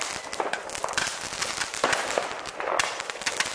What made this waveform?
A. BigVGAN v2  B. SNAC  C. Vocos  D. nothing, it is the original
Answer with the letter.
D